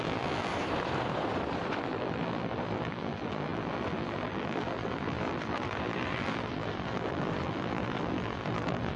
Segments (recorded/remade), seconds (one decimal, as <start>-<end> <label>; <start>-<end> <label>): 0.0-0.5 remade; 0.5-1.8 recorded; 1.8-9.0 remade